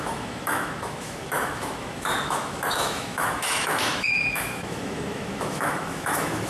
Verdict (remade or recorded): remade